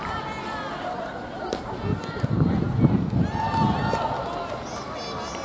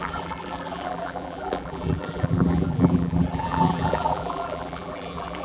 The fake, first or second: second